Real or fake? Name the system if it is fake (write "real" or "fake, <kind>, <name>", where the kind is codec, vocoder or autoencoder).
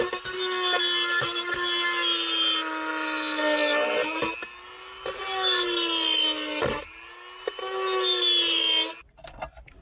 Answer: real